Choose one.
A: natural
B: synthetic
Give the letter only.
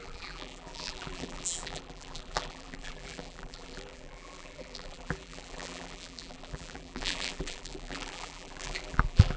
B